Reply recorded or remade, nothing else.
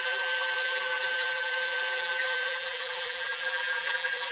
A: remade